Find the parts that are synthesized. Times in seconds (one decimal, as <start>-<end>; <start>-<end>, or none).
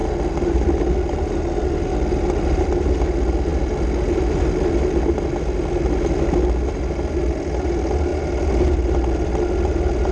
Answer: none